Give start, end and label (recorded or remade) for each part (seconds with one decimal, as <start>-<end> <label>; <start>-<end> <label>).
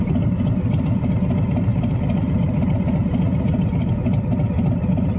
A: 0.0-1.7 recorded; 1.7-3.9 remade; 3.9-5.2 recorded